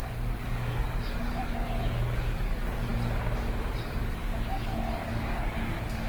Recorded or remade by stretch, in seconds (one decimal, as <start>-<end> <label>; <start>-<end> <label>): 0.0-2.9 remade; 2.9-3.7 recorded; 3.7-6.1 remade